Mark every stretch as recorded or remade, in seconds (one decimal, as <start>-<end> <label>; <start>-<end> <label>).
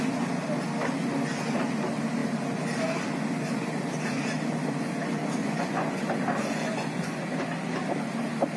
0.0-5.4 recorded; 5.4-6.0 remade; 6.0-6.4 recorded; 6.4-7.2 remade; 7.2-8.6 recorded